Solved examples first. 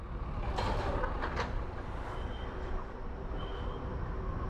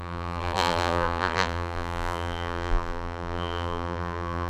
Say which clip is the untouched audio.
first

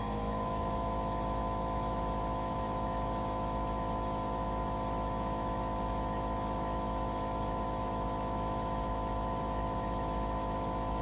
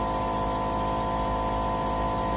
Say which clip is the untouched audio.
second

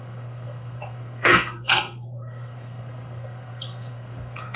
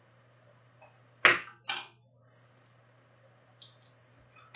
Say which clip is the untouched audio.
second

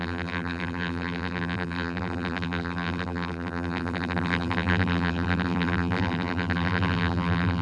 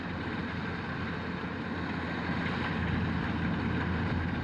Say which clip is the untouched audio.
second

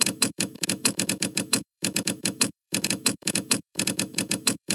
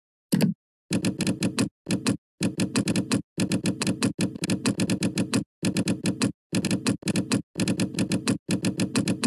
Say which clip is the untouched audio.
second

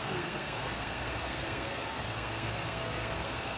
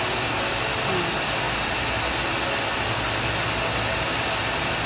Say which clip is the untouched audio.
second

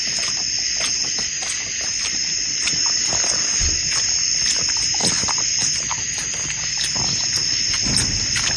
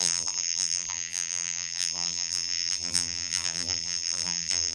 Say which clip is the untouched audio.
first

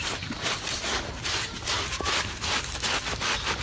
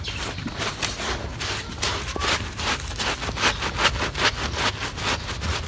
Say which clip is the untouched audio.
second